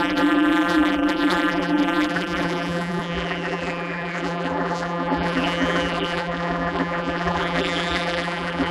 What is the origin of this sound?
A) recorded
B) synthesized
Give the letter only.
B